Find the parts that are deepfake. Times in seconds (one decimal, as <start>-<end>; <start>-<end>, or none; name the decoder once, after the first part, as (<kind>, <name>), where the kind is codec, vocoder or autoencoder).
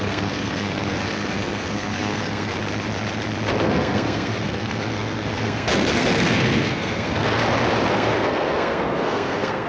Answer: 0.0-2.5 (codec, SNAC); 3.6-7.4; 7.9-9.7